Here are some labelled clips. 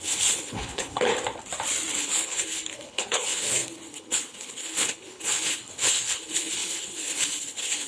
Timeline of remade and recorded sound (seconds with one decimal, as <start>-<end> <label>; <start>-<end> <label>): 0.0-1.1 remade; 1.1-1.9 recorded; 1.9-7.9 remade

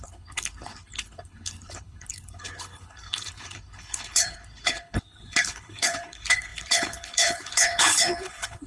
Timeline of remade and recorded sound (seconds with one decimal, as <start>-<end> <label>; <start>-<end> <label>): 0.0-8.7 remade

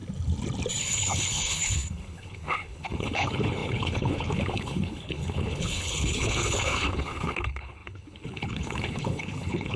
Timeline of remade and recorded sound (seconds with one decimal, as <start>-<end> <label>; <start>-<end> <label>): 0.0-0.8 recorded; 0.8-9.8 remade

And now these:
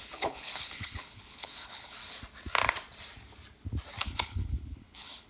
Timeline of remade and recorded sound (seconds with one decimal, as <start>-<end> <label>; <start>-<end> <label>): 0.0-2.0 remade; 2.0-4.0 recorded; 4.0-5.3 remade

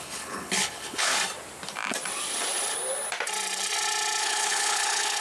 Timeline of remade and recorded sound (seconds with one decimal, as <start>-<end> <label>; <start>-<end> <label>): 0.0-1.1 remade; 1.1-4.2 recorded; 4.2-5.2 remade

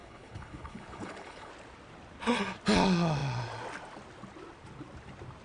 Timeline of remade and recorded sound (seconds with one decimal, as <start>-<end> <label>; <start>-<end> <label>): 0.0-1.5 remade; 1.5-5.4 recorded

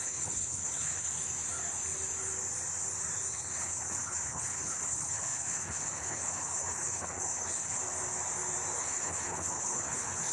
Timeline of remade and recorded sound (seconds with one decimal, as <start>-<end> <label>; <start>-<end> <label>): 0.0-1.1 remade; 1.1-3.3 recorded; 3.3-7.8 remade; 7.8-8.8 recorded; 8.8-10.3 remade